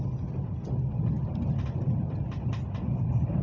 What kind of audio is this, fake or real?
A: real